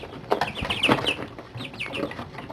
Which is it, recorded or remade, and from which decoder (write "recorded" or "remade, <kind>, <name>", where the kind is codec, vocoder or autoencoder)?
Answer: recorded